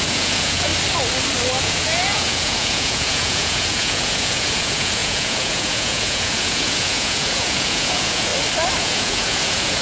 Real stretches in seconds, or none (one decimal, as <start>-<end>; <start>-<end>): 0.7-1.6; 8.3-8.8